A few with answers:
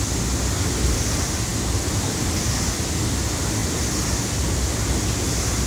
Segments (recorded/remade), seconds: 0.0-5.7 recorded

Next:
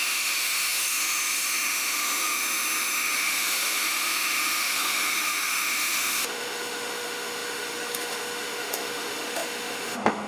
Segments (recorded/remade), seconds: 0.0-10.3 remade

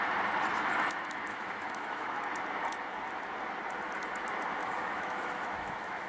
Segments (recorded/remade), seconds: 0.0-1.3 recorded; 1.3-2.2 remade; 2.2-4.6 recorded; 4.6-6.1 remade